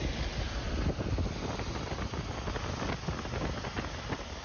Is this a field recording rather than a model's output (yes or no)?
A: yes